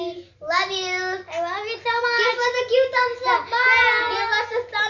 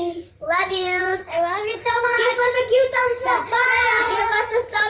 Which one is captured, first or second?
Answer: first